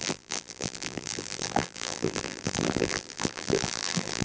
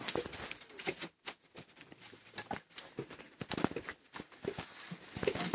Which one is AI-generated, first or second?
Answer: first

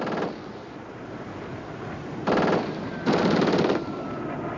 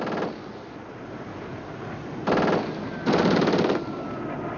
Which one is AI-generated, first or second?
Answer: first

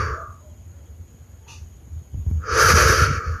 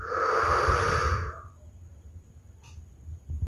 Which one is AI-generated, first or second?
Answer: first